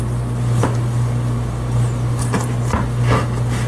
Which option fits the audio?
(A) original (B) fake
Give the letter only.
A